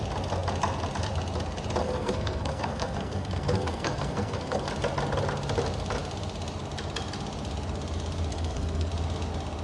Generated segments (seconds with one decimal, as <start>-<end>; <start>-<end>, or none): 1.8-4.7; 8.3-8.9